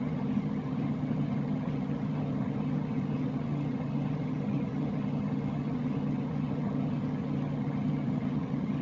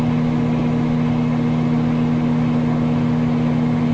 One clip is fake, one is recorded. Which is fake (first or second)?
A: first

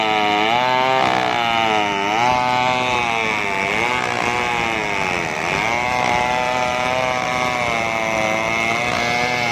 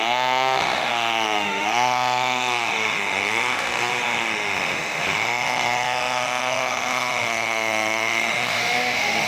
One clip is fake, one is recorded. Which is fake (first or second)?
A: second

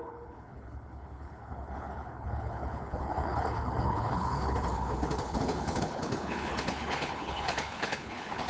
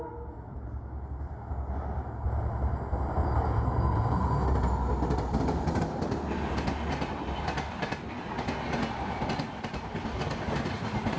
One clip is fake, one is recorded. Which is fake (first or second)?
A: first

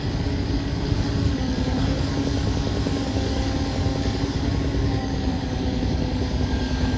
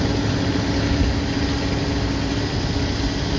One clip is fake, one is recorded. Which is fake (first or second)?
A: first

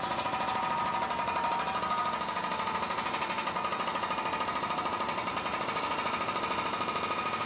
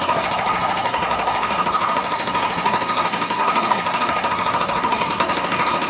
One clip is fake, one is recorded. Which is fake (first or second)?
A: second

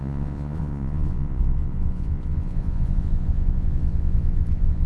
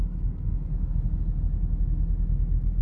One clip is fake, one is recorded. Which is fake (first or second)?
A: first